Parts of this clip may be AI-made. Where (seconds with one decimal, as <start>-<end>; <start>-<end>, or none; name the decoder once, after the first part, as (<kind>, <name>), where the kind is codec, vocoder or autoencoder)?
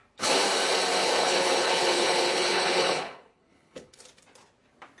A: 1.0-4.0 (codec, HILCodec)